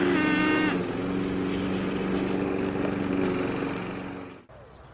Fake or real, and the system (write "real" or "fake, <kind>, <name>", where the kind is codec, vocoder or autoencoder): real